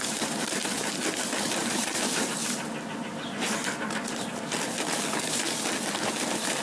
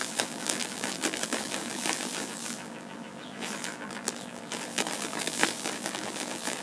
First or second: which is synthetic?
second